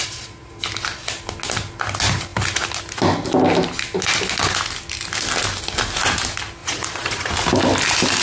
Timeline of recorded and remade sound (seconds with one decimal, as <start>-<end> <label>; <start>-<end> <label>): 0.0-0.5 remade; 0.5-6.6 recorded; 6.6-7.3 remade; 7.3-8.2 recorded